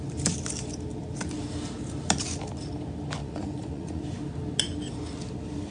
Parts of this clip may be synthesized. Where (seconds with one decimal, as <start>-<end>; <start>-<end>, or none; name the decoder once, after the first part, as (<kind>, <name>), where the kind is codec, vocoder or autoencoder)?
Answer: 3.2-4.0 (vocoder, Vocos)